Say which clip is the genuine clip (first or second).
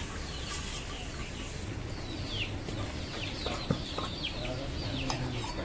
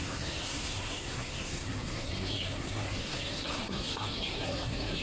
first